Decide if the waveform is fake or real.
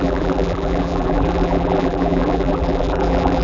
fake